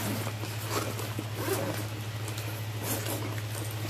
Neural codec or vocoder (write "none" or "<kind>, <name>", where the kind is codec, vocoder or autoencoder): none